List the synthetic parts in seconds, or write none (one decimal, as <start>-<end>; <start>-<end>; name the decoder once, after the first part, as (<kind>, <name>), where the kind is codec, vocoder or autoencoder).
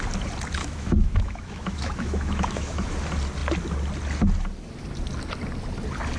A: 0.6-2.9 (autoencoder, DAC-VAE)